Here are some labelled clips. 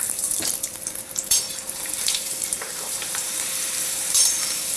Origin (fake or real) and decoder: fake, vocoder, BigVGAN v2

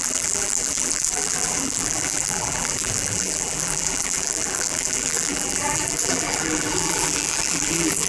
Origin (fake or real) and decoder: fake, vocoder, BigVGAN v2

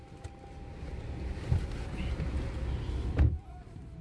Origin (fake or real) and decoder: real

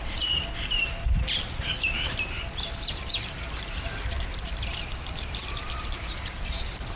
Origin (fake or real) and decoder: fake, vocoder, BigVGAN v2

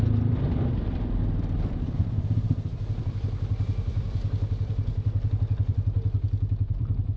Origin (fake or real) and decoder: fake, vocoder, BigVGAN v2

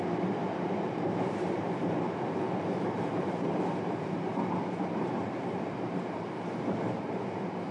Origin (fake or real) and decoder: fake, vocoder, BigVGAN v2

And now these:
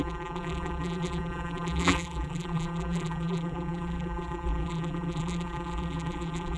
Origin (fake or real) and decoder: fake, vocoder, BigVGAN v2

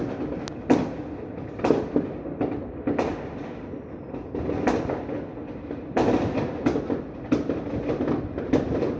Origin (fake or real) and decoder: real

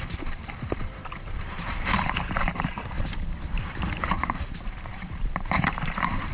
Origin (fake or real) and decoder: fake, vocoder, BigVGAN v2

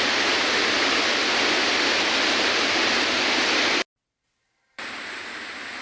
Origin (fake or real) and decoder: real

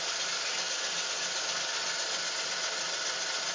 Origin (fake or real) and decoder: real